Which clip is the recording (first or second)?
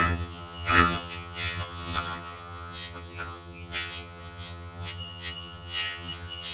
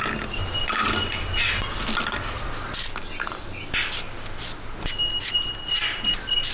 second